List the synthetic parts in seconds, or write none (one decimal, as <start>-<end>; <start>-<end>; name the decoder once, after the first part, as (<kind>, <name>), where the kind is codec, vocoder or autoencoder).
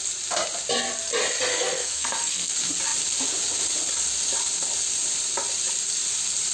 1.5-2.5 (codec, SNAC)